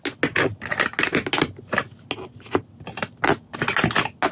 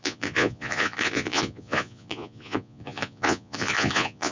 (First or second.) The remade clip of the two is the second